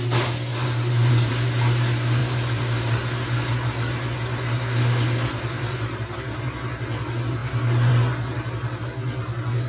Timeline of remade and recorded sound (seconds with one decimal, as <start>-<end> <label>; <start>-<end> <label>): 0.0-0.5 recorded; 0.5-1.3 remade; 1.3-2.2 recorded; 2.2-3.5 remade; 3.5-9.7 recorded